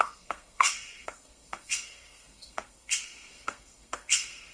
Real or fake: fake